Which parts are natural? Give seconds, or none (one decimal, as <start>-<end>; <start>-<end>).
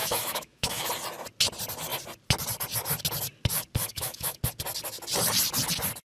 0.9-3.9; 4.4-6.1